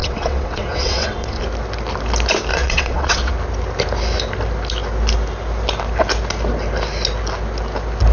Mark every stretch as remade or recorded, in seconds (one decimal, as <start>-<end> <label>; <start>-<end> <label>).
0.0-1.4 remade; 1.4-2.5 recorded; 2.5-3.3 remade; 3.3-8.1 recorded